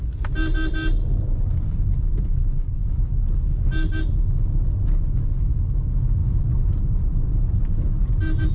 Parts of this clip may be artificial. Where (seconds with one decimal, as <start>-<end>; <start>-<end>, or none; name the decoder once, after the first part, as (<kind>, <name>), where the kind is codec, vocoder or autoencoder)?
6.2-8.0 (vocoder, BigVGAN v2)